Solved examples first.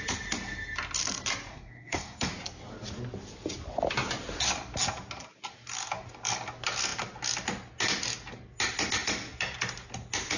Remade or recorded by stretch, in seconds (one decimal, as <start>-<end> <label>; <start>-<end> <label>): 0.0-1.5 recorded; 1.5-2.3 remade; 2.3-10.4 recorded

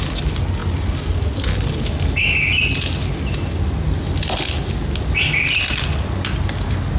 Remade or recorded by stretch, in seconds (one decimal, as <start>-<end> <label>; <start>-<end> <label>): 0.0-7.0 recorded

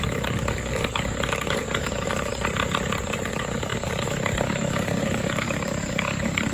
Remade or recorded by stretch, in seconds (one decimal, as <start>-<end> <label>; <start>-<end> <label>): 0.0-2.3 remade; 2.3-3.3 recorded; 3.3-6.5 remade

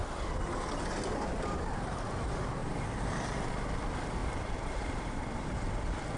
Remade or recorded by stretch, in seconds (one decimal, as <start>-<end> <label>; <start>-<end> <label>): 0.0-2.6 recorded; 2.6-3.5 remade; 3.5-4.2 recorded; 4.2-5.2 remade; 5.2-6.2 recorded

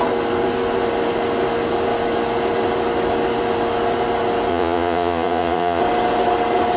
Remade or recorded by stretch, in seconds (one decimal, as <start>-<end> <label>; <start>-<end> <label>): 0.0-4.5 recorded; 4.5-5.8 remade; 5.8-6.8 recorded

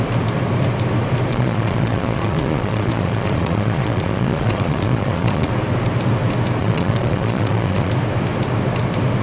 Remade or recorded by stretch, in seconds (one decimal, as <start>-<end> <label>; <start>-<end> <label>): 0.0-1.3 recorded; 1.3-5.5 remade; 5.5-6.6 recorded; 6.6-7.9 remade; 7.9-9.2 recorded